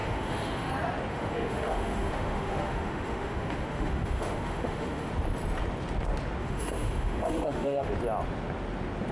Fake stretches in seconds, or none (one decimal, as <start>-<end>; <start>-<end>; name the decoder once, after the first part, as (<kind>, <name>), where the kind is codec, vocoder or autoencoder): 0.0-0.7 (autoencoder, DAC-VAE); 1.1-5.1; 6.4-7.9